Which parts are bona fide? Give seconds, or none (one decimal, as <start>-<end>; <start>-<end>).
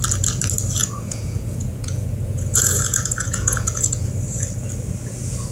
0.0-0.8; 4.1-5.5